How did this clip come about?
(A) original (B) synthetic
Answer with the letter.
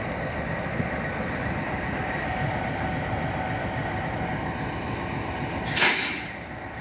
A